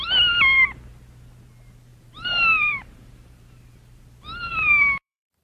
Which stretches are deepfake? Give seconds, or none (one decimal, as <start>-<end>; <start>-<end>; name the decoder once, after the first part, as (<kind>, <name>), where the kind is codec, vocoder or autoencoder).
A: 1.9-4.0 (vocoder, BigVGAN v2); 4.5-5.4

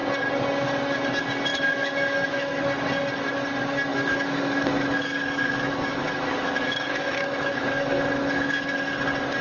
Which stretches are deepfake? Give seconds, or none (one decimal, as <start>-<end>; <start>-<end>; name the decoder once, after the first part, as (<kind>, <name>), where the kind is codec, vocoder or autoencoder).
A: 1.5-2.6 (autoencoder, DAC-VAE); 3.9-8.9

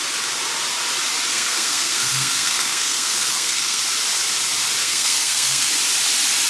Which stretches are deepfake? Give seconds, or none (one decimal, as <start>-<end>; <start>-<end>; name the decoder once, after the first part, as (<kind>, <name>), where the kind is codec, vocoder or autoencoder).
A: 1.3-3.8 (codec, SNAC); 4.8-5.7

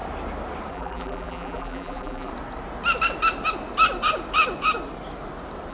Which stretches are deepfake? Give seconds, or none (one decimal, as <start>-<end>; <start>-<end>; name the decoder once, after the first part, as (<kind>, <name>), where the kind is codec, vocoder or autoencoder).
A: 0.7-2.3 (vocoder, BigVGAN v2)

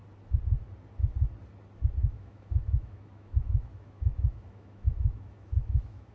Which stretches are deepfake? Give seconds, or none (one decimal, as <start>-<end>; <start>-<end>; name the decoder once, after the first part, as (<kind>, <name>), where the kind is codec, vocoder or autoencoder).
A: 2.0-6.1 (autoencoder, DAC-VAE)

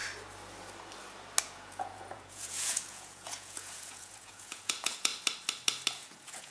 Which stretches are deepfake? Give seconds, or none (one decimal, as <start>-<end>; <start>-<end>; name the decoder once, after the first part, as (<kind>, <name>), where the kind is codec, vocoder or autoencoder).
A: 1.4-5.1 (vocoder, Vocos); 5.9-6.5